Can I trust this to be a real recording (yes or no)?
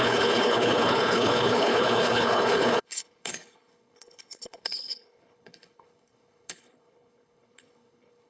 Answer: no